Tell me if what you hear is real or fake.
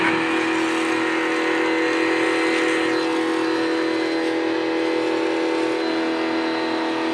real